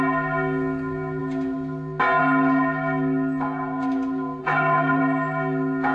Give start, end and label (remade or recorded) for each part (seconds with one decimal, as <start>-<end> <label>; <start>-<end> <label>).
0.0-4.4 recorded; 4.4-5.0 remade; 5.0-5.9 recorded